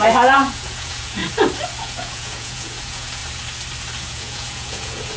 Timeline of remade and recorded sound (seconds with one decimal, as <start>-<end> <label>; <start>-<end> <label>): 0.0-1.2 remade; 1.2-1.8 recorded; 1.8-3.2 remade; 3.2-4.0 recorded; 4.0-5.2 remade